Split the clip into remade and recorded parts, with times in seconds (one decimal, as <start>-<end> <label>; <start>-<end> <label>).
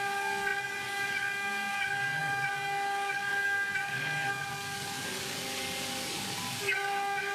0.0-7.3 remade